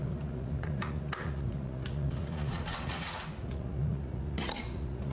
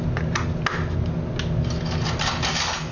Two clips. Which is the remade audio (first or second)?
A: first